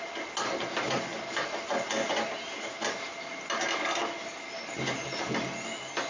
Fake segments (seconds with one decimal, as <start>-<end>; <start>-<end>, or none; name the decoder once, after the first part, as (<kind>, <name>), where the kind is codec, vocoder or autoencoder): none